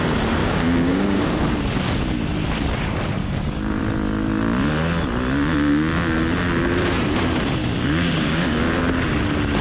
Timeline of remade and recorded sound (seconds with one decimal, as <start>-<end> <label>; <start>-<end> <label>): 0.0-0.4 recorded; 0.4-1.3 remade; 1.3-3.2 recorded; 3.2-3.8 remade; 3.8-7.6 recorded; 7.6-8.8 remade; 8.8-9.6 recorded